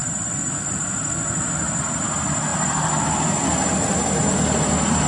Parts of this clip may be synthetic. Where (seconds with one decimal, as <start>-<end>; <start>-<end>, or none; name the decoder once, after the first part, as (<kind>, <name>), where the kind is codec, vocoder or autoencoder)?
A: none